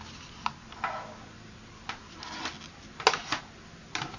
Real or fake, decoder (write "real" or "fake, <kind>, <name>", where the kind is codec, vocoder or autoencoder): real